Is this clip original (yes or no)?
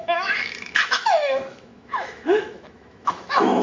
no